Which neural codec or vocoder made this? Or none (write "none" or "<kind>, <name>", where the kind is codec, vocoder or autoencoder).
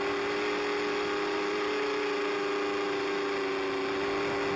none